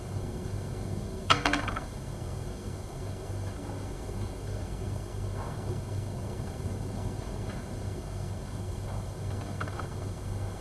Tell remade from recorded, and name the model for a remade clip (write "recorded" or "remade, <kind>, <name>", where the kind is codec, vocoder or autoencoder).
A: remade, codec, SNAC